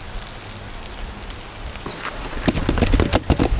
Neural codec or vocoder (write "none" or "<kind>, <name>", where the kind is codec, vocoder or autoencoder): none